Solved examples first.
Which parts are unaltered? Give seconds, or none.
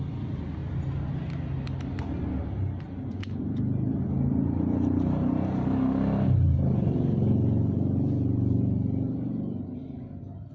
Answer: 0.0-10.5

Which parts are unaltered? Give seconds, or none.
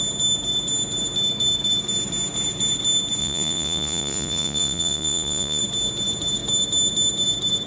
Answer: 0.0-3.2; 5.6-7.7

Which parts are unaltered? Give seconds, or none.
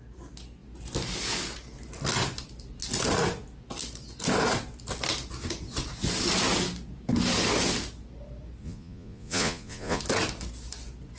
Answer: 0.0-8.6; 10.0-11.2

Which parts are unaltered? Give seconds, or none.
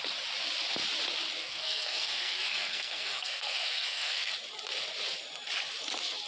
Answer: 0.0-1.4; 4.3-6.3